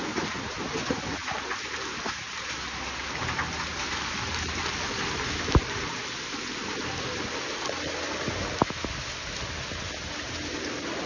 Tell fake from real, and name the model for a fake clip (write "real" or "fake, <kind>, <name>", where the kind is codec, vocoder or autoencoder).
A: real